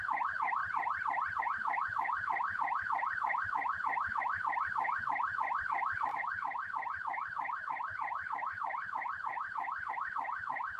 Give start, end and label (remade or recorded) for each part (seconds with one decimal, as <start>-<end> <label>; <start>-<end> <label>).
0.0-0.6 remade; 0.6-1.4 recorded; 1.4-10.8 remade